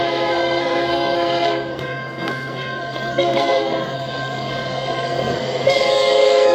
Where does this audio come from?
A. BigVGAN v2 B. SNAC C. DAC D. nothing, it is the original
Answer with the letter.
B